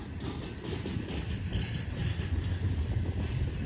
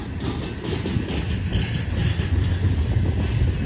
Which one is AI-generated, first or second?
first